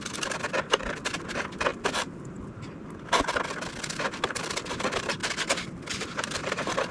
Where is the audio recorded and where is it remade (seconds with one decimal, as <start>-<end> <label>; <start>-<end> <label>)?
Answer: 0.0-6.9 recorded